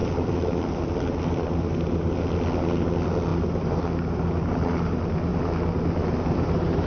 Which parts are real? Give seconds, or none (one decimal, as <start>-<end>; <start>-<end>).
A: 0.8-6.9